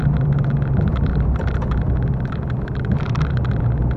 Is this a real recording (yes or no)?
no